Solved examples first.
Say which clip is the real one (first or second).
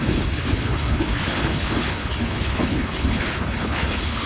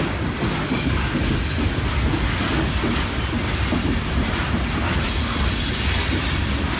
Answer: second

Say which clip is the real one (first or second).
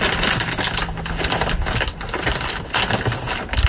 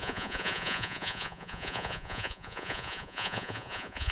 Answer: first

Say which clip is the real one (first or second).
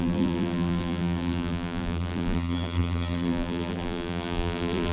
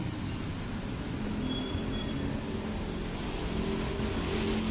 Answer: second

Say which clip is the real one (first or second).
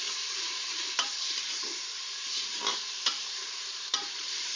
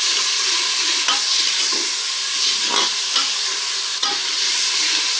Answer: second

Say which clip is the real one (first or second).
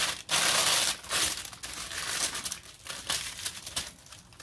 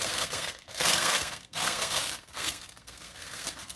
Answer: first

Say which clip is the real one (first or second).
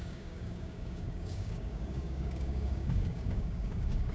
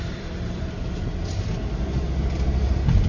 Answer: second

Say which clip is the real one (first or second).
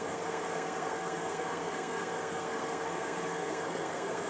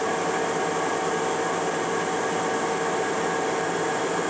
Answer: second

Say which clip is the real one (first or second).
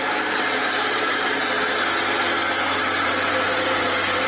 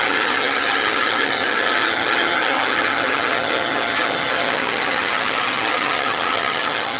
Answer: first